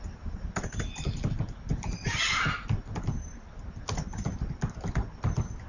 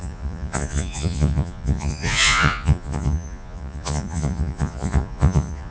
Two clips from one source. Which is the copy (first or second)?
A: second